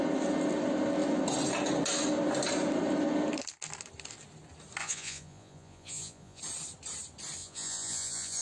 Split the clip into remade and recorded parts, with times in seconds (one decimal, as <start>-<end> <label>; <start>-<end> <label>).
0.0-4.8 recorded; 4.8-6.4 remade; 6.4-7.4 recorded; 7.4-8.4 remade